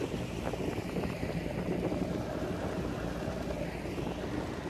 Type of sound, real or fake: real